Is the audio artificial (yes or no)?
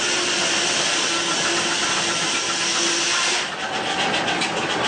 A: no